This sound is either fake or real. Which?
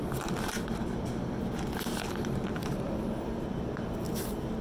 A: fake